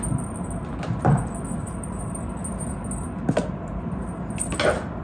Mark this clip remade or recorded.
recorded